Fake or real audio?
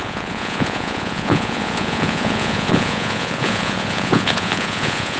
fake